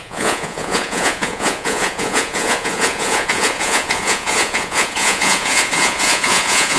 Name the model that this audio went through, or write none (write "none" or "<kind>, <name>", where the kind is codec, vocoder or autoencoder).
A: vocoder, Vocos